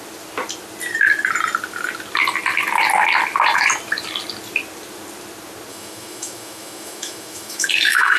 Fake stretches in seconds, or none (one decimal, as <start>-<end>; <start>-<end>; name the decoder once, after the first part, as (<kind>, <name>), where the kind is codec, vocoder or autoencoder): 5.7-8.2 (autoencoder, DAC-VAE)